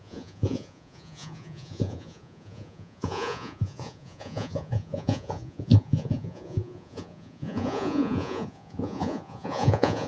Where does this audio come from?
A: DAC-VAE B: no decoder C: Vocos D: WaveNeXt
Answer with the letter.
C